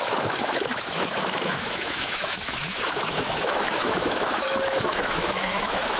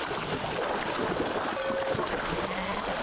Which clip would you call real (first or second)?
second